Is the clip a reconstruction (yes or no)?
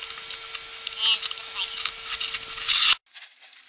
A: no